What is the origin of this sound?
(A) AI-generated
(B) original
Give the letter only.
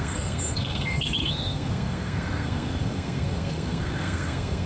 A